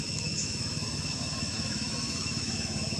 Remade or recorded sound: remade